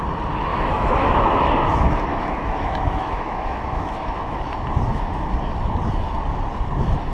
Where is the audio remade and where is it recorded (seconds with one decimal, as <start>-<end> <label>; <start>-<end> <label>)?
0.0-0.5 recorded; 0.5-1.4 remade; 1.4-2.1 recorded; 2.1-4.5 remade; 4.5-7.1 recorded